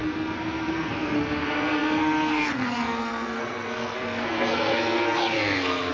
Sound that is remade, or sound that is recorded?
remade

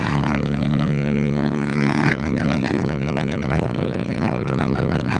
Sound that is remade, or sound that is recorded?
remade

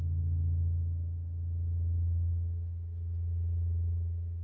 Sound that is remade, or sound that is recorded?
recorded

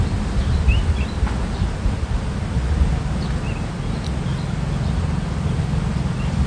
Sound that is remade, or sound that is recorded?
recorded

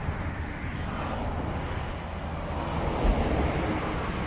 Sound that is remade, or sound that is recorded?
recorded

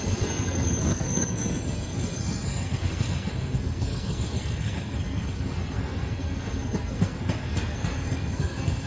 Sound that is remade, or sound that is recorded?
remade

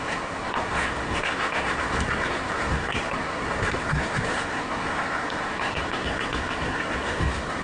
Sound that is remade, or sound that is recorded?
remade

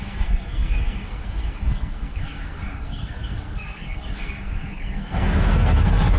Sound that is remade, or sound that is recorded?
remade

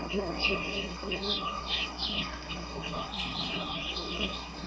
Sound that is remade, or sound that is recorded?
remade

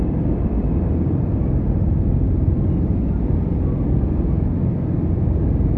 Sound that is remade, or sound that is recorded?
recorded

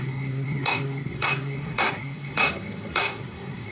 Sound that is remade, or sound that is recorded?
remade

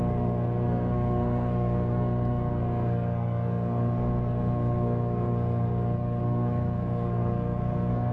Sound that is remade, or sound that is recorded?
remade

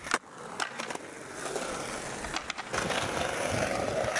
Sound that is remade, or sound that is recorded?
recorded